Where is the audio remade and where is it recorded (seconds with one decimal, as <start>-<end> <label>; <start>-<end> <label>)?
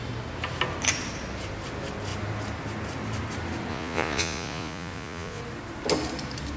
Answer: 0.0-3.7 recorded; 3.7-5.4 remade; 5.4-6.6 recorded